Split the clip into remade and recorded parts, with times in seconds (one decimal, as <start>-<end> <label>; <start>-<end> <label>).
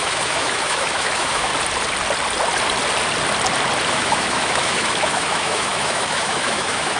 0.0-1.5 remade; 1.5-3.9 recorded; 3.9-7.0 remade